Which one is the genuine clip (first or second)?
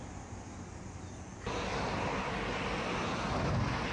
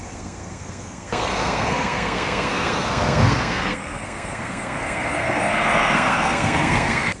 first